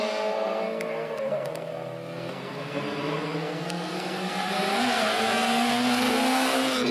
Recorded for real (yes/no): no